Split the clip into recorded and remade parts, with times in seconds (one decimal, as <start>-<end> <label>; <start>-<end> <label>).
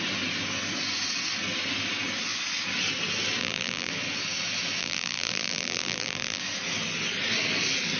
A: 0.0-3.4 recorded; 3.4-3.9 remade; 3.9-4.8 recorded; 4.8-6.4 remade; 6.4-8.0 recorded